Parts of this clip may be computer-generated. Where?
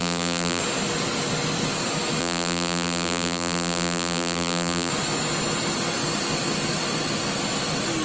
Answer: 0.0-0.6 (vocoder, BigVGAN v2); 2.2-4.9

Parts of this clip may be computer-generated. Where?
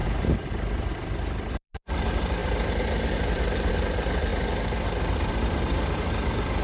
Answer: 0.0-4.3 (vocoder, BigVGAN v2); 5.3-6.6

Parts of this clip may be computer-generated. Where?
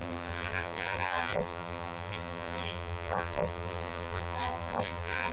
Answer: 0.0-5.3 (vocoder, BigVGAN v2)